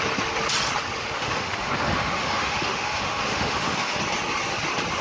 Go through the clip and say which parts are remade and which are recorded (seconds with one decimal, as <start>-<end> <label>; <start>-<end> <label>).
0.0-1.0 recorded; 1.0-4.0 remade; 4.0-5.0 recorded